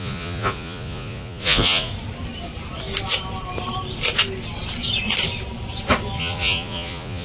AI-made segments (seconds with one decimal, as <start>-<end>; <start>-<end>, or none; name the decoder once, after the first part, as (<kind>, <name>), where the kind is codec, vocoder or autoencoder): 0.0-1.9 (vocoder, Vocos); 6.2-7.2